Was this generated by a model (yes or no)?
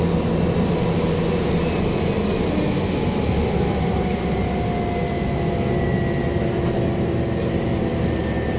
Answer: no